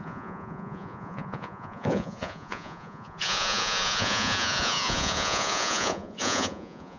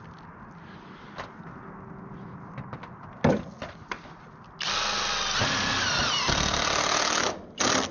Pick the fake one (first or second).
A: first